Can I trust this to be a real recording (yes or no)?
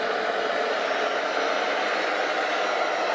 yes